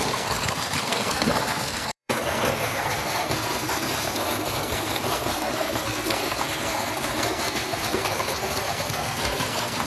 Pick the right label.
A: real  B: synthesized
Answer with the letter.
B